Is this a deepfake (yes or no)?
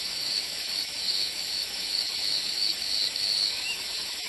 yes